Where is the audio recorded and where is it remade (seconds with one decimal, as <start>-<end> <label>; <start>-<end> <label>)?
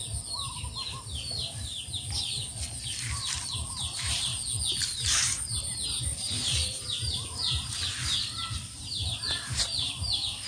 0.0-3.7 recorded; 3.7-4.3 remade; 4.3-4.8 recorded; 4.8-10.5 remade